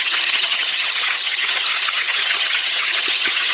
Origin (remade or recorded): remade